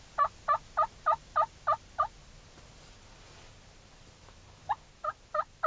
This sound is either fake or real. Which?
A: real